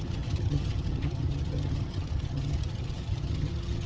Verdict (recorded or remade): remade